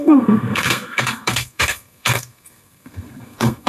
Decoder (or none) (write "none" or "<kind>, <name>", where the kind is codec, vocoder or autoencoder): codec, SNAC